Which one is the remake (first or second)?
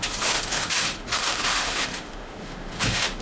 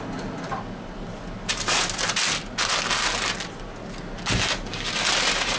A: first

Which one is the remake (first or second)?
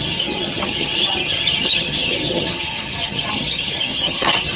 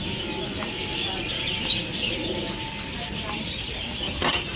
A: first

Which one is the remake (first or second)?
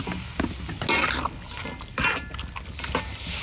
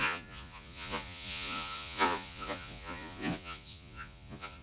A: second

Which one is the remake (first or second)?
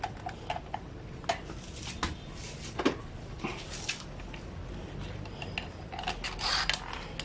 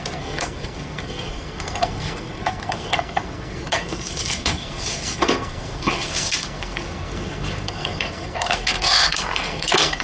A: second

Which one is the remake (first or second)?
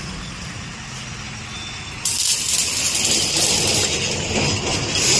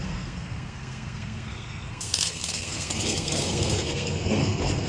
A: second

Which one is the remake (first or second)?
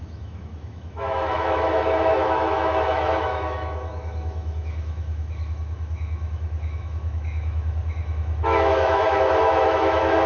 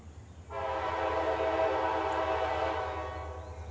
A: first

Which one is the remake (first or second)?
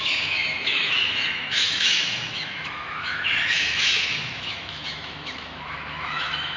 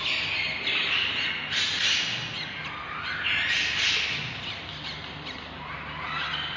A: first